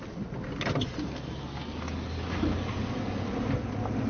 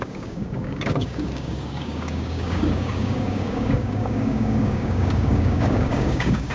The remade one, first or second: second